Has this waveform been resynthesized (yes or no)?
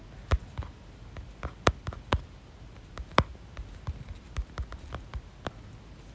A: no